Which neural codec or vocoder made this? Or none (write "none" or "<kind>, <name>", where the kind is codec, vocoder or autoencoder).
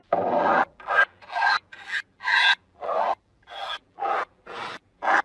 vocoder, BigVGAN v2